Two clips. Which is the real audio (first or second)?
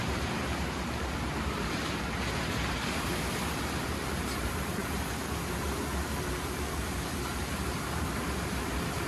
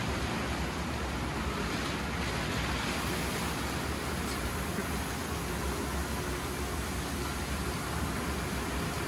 second